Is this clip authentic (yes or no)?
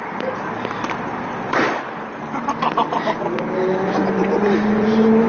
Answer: no